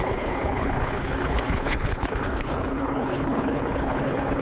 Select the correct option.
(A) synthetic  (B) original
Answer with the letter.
A